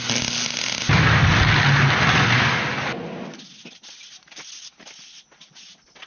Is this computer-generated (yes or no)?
no